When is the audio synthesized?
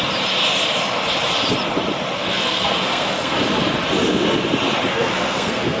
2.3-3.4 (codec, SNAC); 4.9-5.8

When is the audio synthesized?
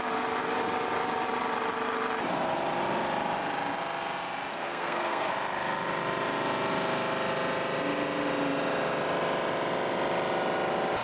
4.5-5.3 (codec, SNAC)